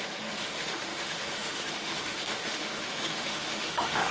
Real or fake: fake